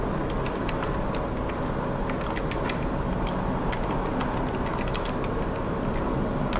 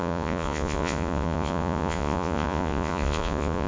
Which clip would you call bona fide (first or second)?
first